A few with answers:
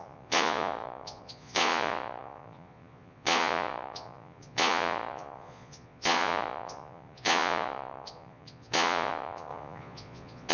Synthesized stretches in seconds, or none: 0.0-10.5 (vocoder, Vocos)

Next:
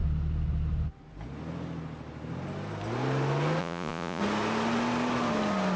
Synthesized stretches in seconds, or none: 3.6-4.2 (vocoder, Vocos)

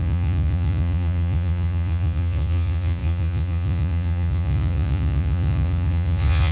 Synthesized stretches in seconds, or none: 0.0-6.5 (vocoder, Vocos)

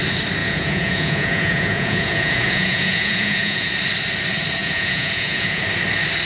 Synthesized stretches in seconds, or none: 0.4-3.7 (vocoder, Vocos); 4.6-5.6